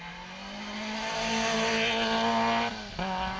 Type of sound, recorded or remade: recorded